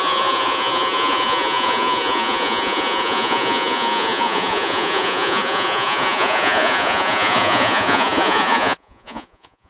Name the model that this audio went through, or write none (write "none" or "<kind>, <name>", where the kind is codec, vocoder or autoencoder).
vocoder, Vocos